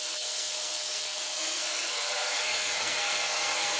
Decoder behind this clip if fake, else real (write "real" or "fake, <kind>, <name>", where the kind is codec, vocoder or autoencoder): fake, codec, SNAC